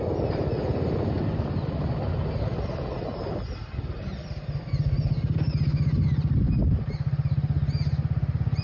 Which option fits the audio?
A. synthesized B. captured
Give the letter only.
B